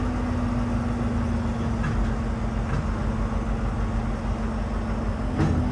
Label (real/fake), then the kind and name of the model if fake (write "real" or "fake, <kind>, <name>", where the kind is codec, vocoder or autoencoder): real